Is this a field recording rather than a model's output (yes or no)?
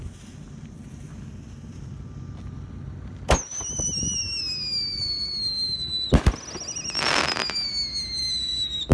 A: yes